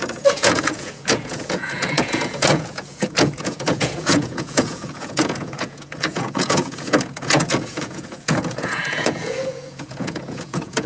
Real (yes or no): no